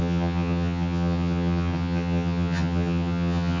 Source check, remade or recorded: remade